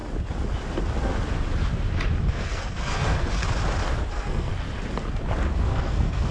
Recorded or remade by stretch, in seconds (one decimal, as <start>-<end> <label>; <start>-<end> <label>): 0.0-2.3 recorded; 2.3-3.4 remade; 3.4-4.1 recorded; 4.1-4.5 remade; 4.5-5.5 recorded; 5.5-6.3 remade